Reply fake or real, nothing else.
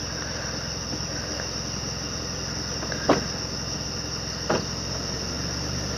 real